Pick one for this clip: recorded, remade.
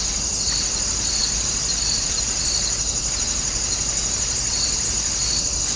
recorded